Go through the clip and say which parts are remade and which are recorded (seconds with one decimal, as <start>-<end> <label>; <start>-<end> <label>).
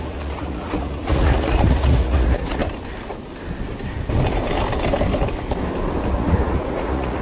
0.0-2.6 remade; 2.6-6.1 recorded; 6.1-7.2 remade